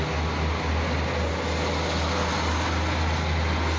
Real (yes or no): yes